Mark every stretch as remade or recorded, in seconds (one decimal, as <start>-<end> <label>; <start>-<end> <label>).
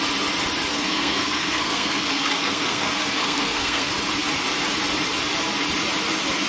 0.0-0.7 recorded; 0.7-4.0 remade; 4.0-6.5 recorded